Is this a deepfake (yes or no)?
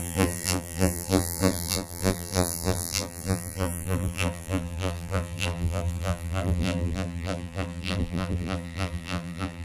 yes